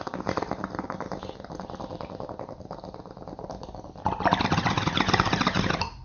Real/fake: real